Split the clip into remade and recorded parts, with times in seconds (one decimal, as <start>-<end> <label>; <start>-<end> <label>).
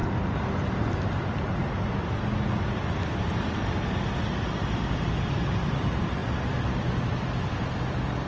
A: 0.0-8.3 recorded